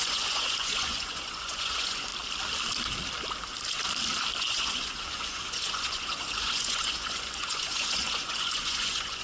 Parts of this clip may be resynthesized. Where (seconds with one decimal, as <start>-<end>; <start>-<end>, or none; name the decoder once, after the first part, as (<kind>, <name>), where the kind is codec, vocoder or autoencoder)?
0.0-2.1 (vocoder, Vocos); 4.4-9.2